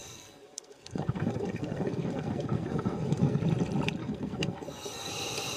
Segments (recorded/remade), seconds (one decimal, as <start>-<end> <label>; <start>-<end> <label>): 0.0-3.4 remade; 3.4-4.0 recorded; 4.0-5.1 remade; 5.1-5.6 recorded